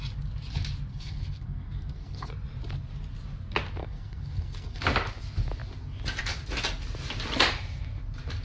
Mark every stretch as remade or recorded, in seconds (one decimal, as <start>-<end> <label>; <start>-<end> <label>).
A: 0.0-0.9 recorded; 0.9-2.3 remade; 2.3-3.8 recorded; 3.8-4.8 remade; 4.8-8.4 recorded